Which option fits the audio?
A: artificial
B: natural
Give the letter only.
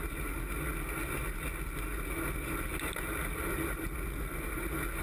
B